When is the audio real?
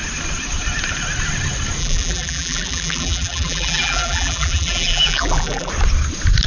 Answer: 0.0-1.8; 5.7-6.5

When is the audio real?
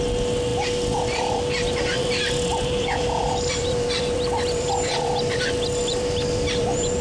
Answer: 0.0-0.5; 2.1-2.5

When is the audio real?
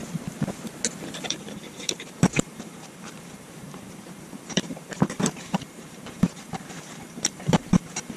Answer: 0.0-1.3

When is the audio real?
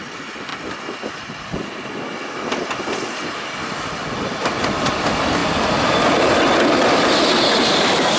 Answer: 0.5-4.9; 5.4-7.7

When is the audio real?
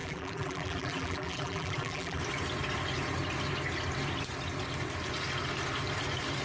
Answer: 2.2-6.4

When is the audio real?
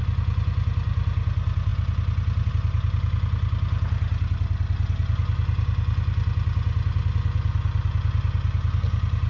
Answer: 0.0-9.3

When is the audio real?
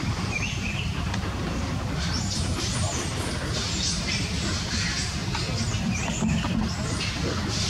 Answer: 5.2-7.7